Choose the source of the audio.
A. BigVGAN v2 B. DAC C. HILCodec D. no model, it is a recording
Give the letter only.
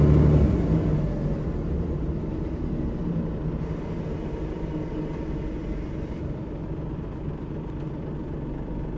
D